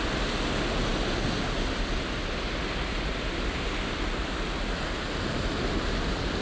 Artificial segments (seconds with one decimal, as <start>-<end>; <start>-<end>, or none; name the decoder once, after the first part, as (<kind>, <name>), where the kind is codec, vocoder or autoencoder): none